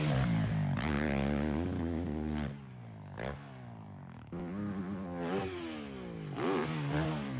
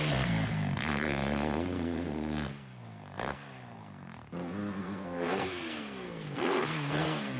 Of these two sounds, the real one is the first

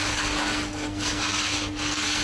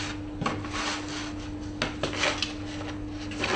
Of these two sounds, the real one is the second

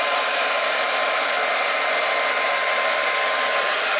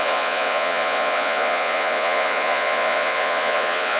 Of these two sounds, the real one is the first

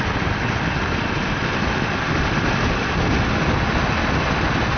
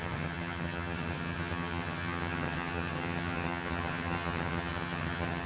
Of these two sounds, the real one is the first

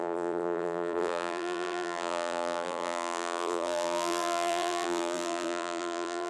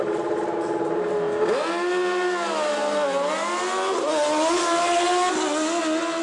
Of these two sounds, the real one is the second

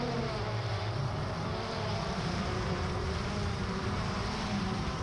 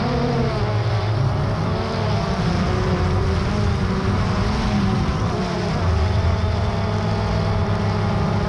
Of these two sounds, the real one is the second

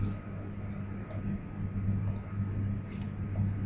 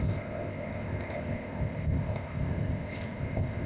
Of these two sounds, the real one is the first